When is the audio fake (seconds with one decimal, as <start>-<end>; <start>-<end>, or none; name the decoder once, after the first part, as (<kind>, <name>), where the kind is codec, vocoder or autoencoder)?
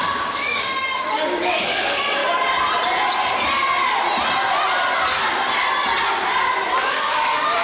0.0-2.2 (codec, DAC); 6.8-7.6